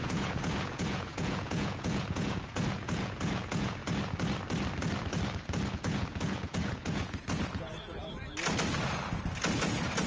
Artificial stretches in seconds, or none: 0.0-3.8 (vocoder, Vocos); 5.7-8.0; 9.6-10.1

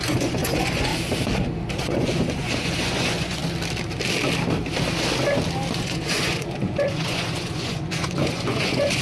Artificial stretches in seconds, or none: 0.0-0.9 (vocoder, Vocos); 1.8-3.4; 5.8-9.0

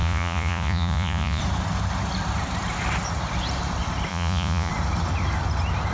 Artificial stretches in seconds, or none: 0.0-1.4 (vocoder, Vocos); 4.1-4.7

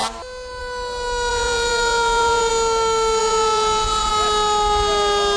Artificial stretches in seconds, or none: 1.3-2.5 (vocoder, Vocos); 3.2-4.1